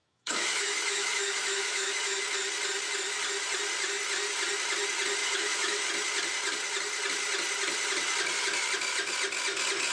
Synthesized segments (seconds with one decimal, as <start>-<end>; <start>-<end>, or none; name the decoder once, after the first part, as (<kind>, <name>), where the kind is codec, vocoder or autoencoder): 0.0-2.2 (autoencoder, DAC-VAE); 5.2-5.9